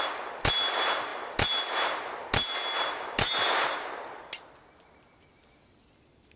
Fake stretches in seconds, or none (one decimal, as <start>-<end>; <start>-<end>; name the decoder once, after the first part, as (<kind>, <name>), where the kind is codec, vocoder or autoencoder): none